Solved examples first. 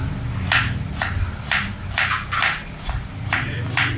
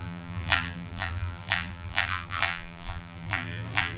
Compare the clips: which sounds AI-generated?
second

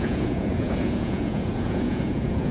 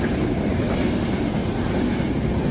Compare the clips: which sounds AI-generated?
first